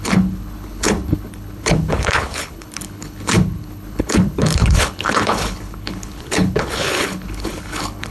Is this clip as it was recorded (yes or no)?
no